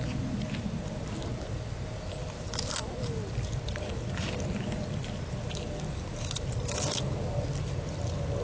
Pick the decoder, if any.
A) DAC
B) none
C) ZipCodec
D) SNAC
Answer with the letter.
B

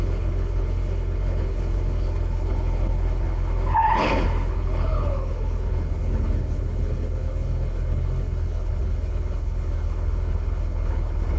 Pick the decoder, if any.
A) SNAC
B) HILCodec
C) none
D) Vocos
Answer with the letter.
B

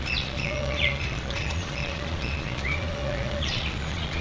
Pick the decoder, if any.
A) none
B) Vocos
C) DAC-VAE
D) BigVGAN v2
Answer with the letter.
B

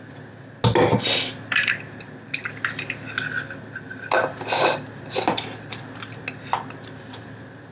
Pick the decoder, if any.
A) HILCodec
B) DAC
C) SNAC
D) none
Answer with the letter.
D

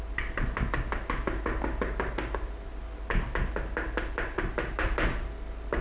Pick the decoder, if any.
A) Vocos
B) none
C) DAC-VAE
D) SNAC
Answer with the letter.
B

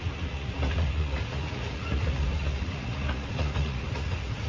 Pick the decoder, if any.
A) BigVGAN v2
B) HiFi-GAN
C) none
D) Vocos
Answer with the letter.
D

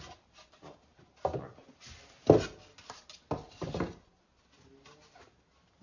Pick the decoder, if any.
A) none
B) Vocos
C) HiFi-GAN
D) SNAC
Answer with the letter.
A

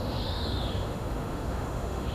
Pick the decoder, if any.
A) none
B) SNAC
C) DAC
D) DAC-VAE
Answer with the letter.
D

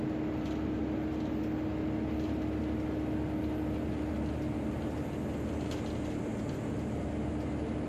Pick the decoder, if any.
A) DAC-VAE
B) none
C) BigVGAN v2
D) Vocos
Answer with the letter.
B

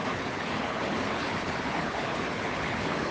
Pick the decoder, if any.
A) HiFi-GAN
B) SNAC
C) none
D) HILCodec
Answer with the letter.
D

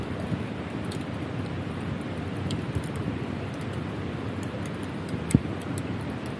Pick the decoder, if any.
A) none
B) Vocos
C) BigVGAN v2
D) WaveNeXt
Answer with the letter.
A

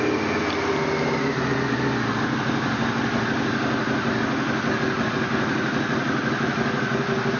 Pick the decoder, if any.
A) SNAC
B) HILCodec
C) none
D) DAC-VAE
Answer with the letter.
C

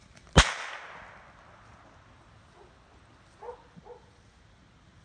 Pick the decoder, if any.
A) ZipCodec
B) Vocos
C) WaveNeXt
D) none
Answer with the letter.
D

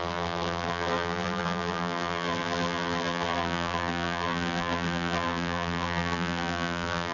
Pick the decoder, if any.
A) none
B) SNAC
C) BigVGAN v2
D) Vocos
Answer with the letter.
C